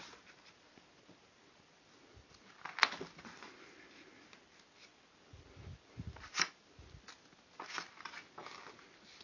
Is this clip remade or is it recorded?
recorded